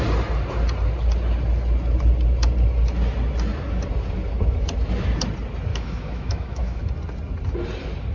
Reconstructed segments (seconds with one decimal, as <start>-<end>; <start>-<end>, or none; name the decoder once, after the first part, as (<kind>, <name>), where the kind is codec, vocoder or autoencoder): 5.7-6.8 (autoencoder, DAC-VAE)